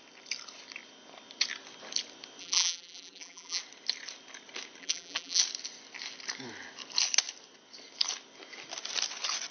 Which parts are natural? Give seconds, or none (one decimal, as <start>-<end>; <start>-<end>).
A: 0.0-2.4; 3.6-4.8; 5.4-9.5